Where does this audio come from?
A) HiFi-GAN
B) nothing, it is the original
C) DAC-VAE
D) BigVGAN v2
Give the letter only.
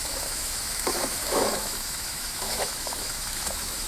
C